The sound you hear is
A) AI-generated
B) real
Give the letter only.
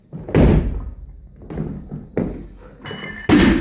B